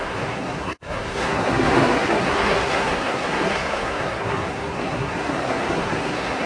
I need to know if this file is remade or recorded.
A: remade